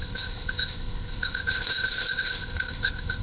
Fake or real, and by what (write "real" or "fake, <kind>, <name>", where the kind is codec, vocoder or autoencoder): fake, codec, ZipCodec